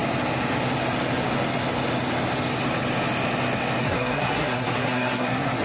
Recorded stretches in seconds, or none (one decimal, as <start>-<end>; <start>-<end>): 0.0-3.8